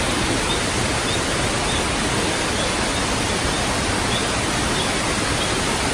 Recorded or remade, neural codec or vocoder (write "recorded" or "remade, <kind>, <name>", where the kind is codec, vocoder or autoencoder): recorded